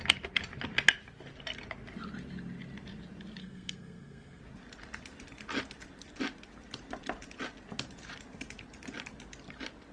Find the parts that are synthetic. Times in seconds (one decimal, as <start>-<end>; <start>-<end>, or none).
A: 3.4-4.4